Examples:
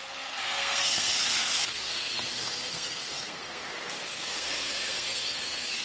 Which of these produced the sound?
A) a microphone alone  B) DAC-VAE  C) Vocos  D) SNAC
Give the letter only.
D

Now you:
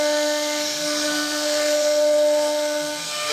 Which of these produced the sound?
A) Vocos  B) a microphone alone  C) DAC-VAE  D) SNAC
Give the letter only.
D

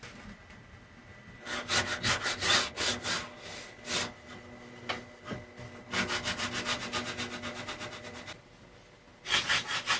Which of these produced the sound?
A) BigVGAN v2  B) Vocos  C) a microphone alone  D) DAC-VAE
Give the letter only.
C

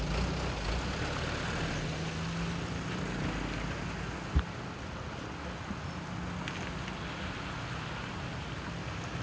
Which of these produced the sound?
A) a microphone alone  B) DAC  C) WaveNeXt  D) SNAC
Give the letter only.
A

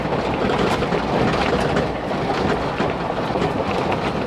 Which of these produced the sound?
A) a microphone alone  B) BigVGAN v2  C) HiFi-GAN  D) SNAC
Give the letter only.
A